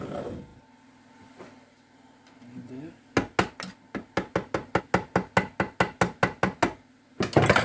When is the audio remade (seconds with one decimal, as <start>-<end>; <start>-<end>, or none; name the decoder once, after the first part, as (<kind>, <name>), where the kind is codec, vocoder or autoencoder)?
none